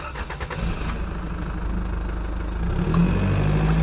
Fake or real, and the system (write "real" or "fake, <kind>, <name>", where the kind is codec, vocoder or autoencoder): real